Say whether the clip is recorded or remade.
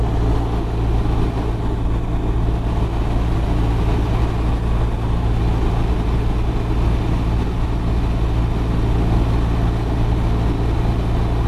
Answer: recorded